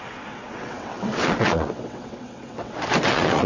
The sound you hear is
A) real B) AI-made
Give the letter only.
B